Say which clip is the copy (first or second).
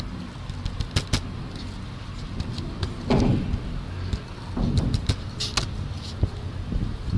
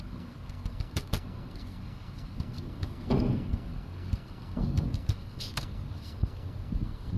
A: second